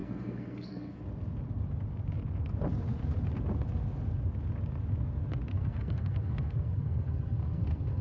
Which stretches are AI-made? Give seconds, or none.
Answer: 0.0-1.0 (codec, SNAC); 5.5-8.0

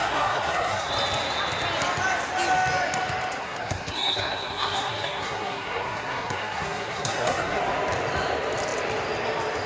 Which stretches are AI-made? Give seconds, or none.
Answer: 0.0-0.9 (codec, SNAC); 3.4-7.6

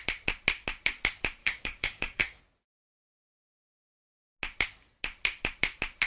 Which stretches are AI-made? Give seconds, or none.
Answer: 1.4-2.4 (codec, DAC)

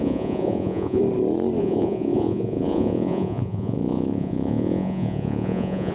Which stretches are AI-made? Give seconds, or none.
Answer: 0.0-1.0 (vocoder, Vocos); 1.6-5.9

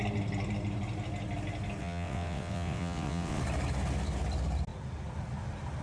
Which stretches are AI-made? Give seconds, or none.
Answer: 1.8-3.4 (vocoder, WaveNeXt)

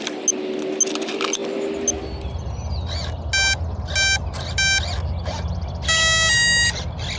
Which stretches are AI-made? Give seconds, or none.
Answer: none

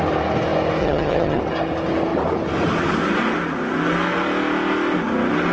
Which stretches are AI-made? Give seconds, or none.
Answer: 0.8-1.4 (vocoder, HiFi-GAN)

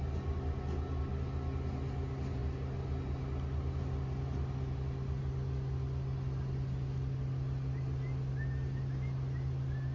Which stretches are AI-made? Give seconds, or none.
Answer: none